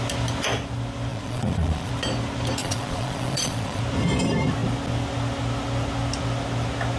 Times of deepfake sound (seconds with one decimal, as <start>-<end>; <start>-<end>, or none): 1.1-1.9; 2.6-3.8